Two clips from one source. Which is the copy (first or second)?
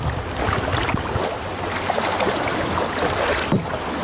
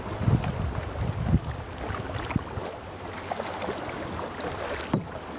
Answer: first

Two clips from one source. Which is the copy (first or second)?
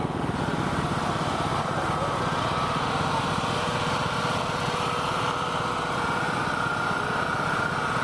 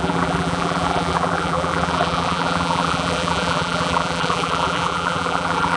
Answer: second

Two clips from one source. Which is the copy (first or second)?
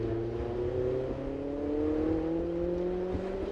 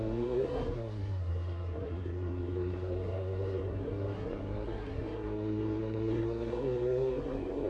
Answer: second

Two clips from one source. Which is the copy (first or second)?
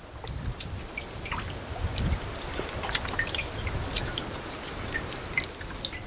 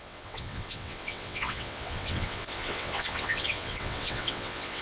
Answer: second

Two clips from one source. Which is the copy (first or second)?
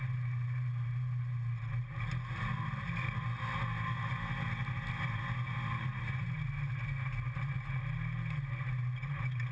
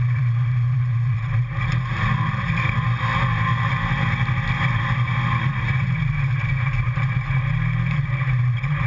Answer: second